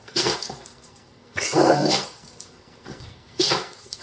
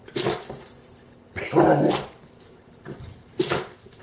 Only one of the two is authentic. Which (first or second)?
second